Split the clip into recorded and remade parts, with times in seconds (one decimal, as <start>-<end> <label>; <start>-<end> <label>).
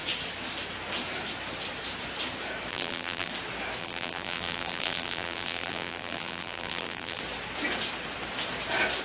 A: 0.0-2.7 recorded; 2.7-3.3 remade; 3.3-3.8 recorded; 3.8-7.2 remade; 7.2-9.0 recorded